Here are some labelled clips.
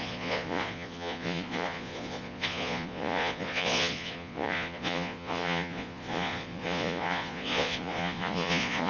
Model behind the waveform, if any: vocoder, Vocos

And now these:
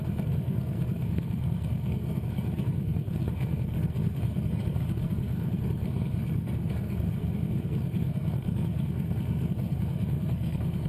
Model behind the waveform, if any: codec, SNAC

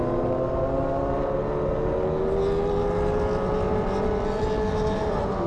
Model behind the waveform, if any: none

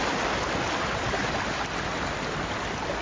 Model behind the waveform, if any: none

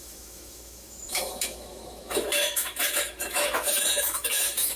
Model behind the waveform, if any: autoencoder, DAC-VAE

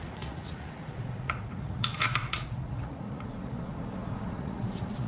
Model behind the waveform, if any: vocoder, Vocos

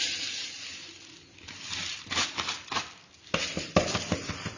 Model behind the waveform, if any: none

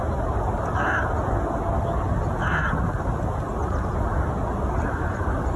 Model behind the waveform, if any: none